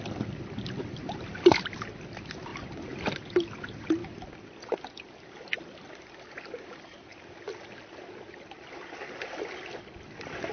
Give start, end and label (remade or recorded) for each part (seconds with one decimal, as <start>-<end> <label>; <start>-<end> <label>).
0.0-10.5 recorded